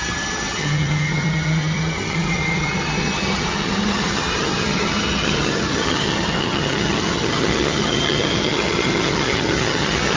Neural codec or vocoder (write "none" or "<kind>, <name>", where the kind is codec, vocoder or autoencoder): vocoder, HiFi-GAN